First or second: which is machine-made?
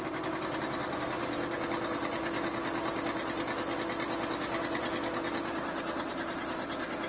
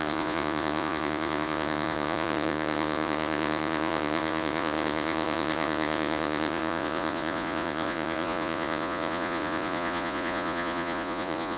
second